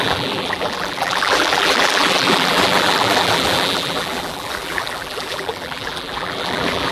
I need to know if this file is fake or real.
fake